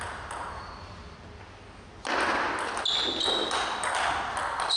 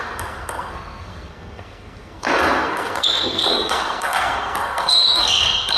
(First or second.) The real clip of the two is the first